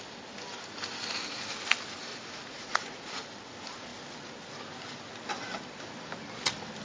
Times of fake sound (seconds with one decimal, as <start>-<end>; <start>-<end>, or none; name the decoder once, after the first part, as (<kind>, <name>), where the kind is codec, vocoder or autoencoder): 2.1-3.2 (vocoder, Vocos)